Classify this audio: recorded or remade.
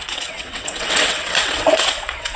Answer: remade